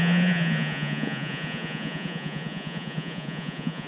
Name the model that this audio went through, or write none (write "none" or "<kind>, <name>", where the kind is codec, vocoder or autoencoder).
vocoder, Vocos